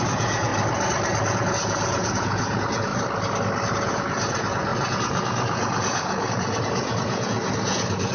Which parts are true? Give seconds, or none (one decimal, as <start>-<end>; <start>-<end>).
0.5-1.3; 2.9-3.7